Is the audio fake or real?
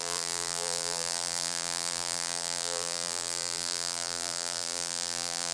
fake